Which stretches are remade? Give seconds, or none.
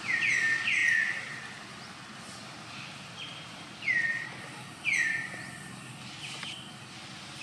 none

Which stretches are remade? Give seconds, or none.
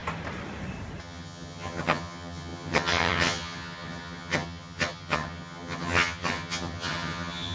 1.0-7.5 (vocoder, HiFi-GAN)